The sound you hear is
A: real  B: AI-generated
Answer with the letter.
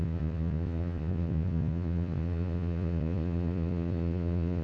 B